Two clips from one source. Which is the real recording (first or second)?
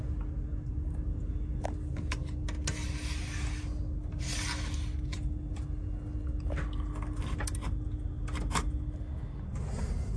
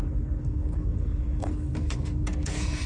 first